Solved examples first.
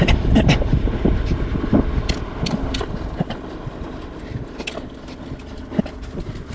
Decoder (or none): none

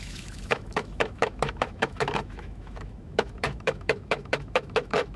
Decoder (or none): autoencoder, DAC-VAE